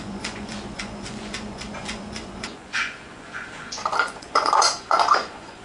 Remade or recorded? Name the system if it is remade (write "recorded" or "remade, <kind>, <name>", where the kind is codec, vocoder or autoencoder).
remade, vocoder, Vocos